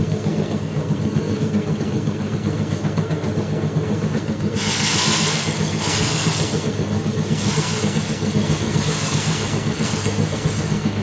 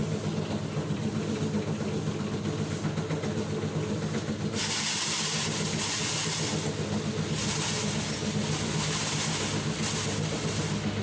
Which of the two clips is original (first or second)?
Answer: second